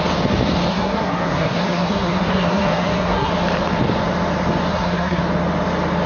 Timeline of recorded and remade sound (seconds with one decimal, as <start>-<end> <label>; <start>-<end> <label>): 0.0-0.7 recorded; 0.7-3.3 remade; 3.3-4.7 recorded; 4.7-5.2 remade; 5.2-6.1 recorded